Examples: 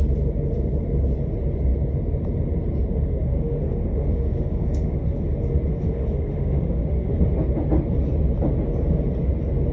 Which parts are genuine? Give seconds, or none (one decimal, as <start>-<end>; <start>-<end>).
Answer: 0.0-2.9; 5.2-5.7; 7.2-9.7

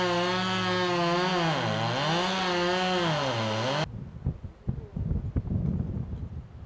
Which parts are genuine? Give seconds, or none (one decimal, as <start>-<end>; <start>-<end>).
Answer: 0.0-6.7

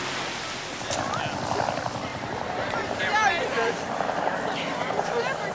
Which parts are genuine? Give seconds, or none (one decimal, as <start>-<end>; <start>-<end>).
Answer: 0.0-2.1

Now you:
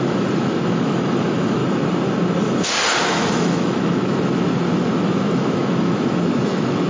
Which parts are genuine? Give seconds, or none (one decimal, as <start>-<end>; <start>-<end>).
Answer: 1.6-3.0